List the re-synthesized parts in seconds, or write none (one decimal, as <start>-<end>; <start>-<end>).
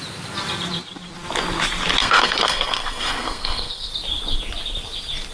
2.0-3.9